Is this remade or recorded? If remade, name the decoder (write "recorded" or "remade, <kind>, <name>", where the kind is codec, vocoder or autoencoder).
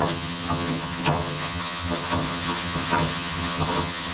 remade, vocoder, HiFi-GAN